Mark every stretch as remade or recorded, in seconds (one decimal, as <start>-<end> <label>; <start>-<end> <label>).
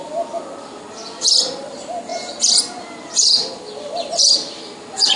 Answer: 0.0-5.2 recorded